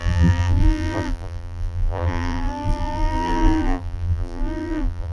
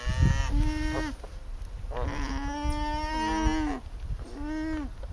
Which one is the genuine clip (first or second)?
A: second